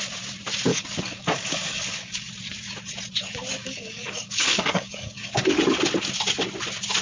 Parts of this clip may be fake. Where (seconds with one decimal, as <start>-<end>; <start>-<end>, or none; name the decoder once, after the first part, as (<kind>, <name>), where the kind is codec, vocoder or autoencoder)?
0.7-2.3 (codec, DAC); 3.6-5.6